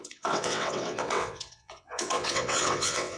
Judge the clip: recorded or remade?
remade